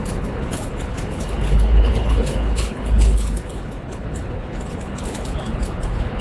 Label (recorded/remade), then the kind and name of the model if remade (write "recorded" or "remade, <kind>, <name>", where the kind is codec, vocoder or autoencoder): remade, codec, HILCodec